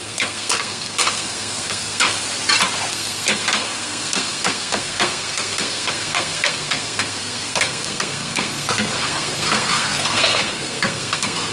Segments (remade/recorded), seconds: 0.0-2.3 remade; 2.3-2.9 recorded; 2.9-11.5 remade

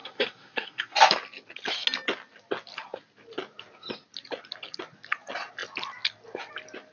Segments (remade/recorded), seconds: 0.0-1.0 remade; 1.0-6.9 recorded

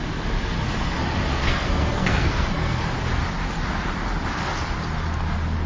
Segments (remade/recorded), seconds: 0.0-1.3 recorded; 1.3-2.8 remade; 2.8-5.7 recorded

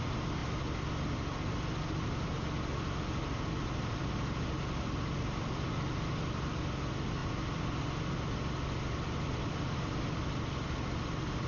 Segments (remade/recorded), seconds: 0.0-11.5 recorded

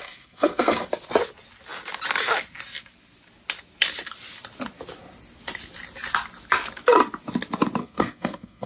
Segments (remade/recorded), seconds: 0.0-0.9 remade; 0.9-7.8 recorded; 7.8-8.7 remade

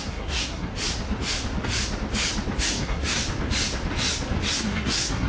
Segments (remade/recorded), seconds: 0.0-0.7 remade; 0.7-2.6 recorded; 2.6-3.2 remade; 3.2-4.5 recorded; 4.5-5.3 remade

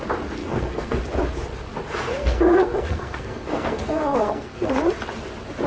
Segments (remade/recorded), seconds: 0.0-0.4 recorded; 0.4-1.0 remade; 1.0-2.1 recorded; 2.1-4.7 remade; 4.7-5.7 recorded

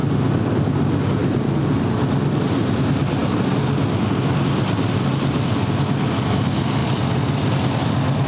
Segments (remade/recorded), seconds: 0.0-8.3 recorded